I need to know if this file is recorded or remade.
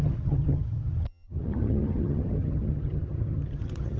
remade